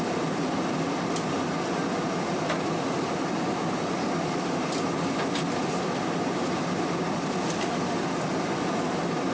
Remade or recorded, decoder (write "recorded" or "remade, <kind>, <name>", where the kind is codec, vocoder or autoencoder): recorded